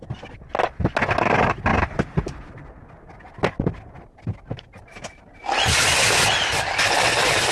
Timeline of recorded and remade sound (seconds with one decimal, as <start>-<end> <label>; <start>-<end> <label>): 0.0-7.5 recorded